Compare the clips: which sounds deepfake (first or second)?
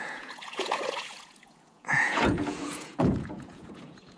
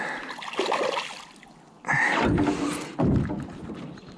first